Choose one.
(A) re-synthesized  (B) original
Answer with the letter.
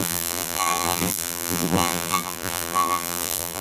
A